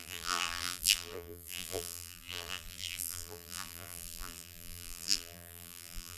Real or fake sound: fake